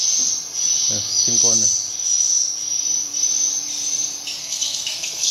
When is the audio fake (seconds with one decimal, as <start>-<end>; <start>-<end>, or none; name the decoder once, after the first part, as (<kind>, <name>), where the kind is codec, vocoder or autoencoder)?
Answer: 4.4-5.3 (codec, SNAC)